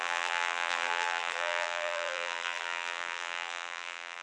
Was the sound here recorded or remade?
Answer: remade